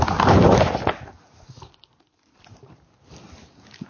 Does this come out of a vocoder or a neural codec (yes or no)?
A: no